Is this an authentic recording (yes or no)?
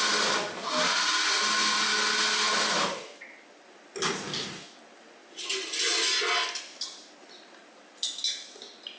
yes